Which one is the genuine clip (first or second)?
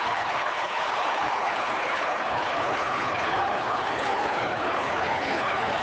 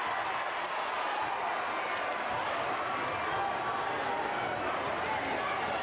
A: second